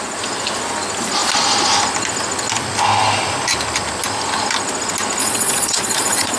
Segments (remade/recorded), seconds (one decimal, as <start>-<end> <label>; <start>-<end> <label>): 0.0-5.2 recorded; 5.2-6.4 remade

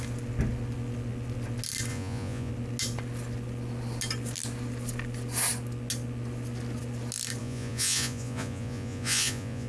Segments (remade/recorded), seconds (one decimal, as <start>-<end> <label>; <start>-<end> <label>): 0.0-1.9 recorded; 1.9-2.5 remade; 2.5-7.4 recorded; 7.4-9.7 remade

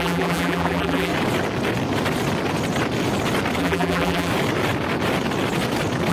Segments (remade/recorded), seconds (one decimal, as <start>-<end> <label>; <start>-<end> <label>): 0.0-1.1 remade; 1.1-3.6 recorded; 3.6-4.3 remade; 4.3-6.1 recorded

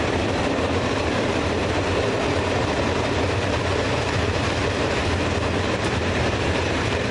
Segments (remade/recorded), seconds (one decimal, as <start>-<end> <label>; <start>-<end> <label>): 0.0-7.1 remade

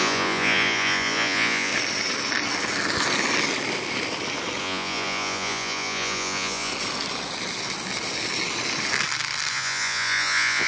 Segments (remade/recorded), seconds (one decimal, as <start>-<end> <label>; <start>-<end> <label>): 0.0-1.7 remade; 1.7-4.6 recorded; 4.6-6.7 remade; 6.7-9.5 recorded; 9.5-10.7 remade